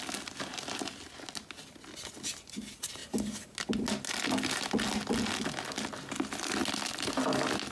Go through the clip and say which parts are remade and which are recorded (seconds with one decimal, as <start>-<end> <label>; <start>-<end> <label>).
0.0-7.7 recorded